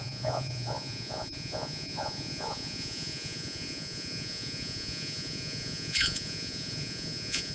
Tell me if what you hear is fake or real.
fake